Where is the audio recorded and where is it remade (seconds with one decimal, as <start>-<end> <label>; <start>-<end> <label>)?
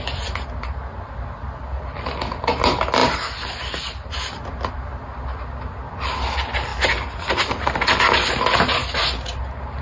0.0-9.8 recorded